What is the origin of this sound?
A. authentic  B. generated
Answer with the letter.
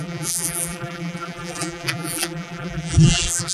B